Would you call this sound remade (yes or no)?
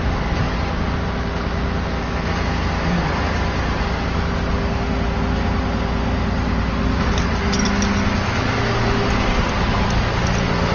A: no